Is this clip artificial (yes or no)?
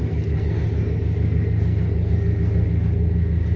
yes